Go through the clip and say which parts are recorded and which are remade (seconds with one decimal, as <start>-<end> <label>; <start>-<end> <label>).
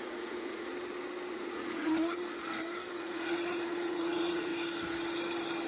0.0-0.7 remade; 0.7-1.3 recorded; 1.3-2.2 remade; 2.2-2.9 recorded; 2.9-4.5 remade; 4.5-5.7 recorded